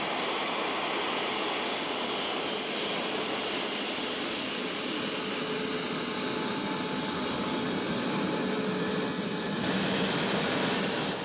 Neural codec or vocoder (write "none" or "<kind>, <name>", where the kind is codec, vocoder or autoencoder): none